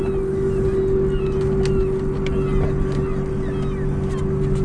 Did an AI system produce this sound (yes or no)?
no